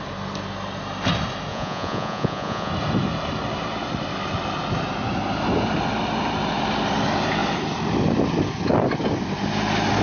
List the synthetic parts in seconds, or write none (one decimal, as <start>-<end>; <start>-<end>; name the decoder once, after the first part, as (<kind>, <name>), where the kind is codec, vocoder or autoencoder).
1.5-2.7 (vocoder, Vocos)